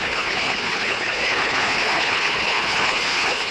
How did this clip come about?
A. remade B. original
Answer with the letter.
A